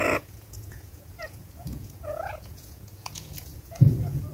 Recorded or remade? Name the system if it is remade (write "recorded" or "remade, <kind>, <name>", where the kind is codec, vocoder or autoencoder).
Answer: remade, vocoder, Vocos